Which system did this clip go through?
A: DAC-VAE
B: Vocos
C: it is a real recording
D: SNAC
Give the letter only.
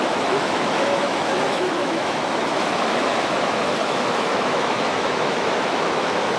A